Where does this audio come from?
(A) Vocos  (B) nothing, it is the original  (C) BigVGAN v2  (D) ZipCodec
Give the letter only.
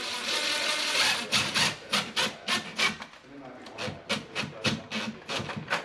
B